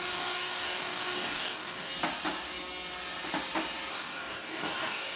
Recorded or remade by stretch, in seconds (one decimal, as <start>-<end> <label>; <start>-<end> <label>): 0.0-1.9 remade; 1.9-3.9 recorded; 3.9-5.2 remade